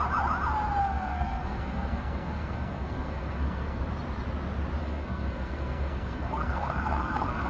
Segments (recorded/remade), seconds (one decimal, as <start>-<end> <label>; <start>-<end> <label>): 0.0-0.8 recorded; 0.8-3.8 remade; 3.8-4.8 recorded; 4.8-7.5 remade